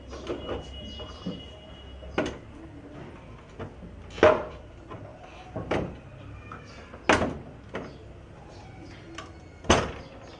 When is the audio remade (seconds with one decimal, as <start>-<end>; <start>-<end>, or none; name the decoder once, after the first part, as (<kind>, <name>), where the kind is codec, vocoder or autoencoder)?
5.1-5.9 (vocoder, BigVGAN v2)